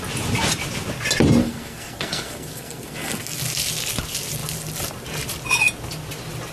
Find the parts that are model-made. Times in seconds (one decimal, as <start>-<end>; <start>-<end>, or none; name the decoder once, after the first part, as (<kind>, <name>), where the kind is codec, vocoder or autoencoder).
1.4-3.4 (codec, SNAC)